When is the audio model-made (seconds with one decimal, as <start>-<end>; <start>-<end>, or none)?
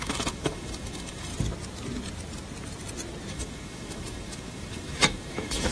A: 0.0-1.3; 3.3-5.7